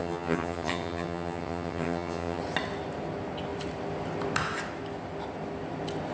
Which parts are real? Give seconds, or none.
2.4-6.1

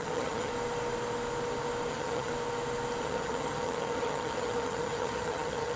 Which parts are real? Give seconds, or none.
0.5-1.9; 2.3-3.0

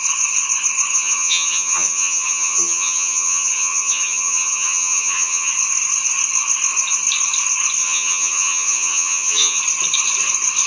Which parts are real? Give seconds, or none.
0.0-0.9; 5.5-7.8; 9.6-10.7

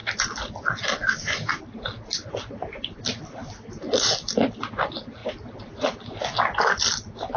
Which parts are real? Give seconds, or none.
0.0-7.4

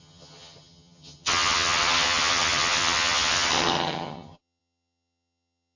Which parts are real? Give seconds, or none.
none

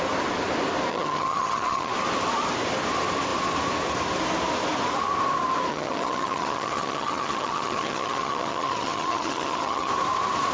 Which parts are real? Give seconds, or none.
0.0-0.9; 1.9-5.7; 9.9-10.5